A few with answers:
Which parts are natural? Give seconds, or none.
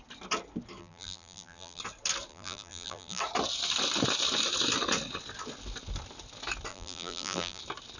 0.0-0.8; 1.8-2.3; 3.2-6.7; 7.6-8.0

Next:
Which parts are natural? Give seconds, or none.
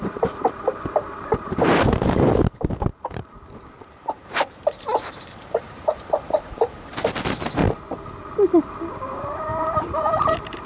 7.6-8.6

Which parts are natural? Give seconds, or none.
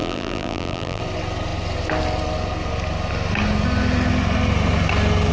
1.0-5.3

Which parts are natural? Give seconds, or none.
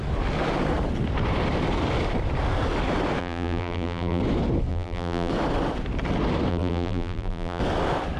0.0-3.2; 4.2-4.7; 5.3-6.5; 7.6-8.2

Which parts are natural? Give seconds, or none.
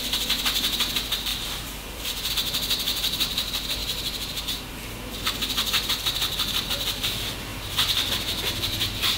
0.0-1.3; 2.3-9.2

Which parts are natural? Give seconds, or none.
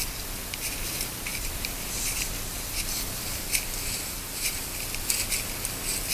0.0-1.3; 4.7-6.1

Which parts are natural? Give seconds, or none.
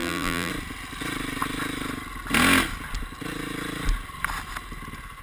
0.5-5.2